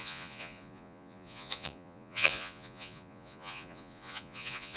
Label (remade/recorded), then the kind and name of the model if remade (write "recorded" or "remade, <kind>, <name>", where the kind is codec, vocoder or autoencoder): remade, vocoder, Vocos